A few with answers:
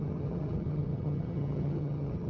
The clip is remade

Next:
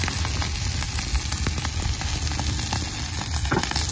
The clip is recorded